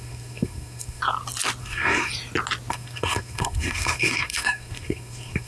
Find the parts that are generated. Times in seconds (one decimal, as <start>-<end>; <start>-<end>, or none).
0.0-1.0; 1.6-2.1; 2.7-5.5